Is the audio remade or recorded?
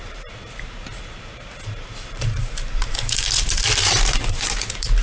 remade